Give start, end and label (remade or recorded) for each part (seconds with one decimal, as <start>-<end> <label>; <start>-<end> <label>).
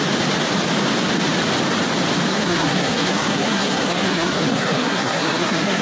0.0-2.3 recorded; 2.3-5.8 remade